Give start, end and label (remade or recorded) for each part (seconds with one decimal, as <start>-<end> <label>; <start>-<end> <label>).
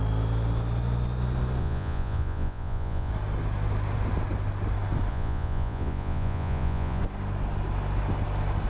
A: 0.0-1.6 recorded; 1.6-3.1 remade; 3.1-5.1 recorded; 5.1-7.0 remade; 7.0-8.7 recorded